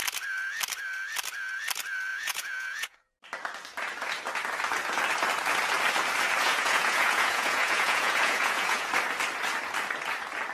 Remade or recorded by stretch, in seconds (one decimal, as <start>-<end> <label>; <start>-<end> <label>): 0.0-2.1 recorded; 2.1-3.1 remade; 3.1-6.4 recorded; 6.4-8.9 remade; 8.9-10.5 recorded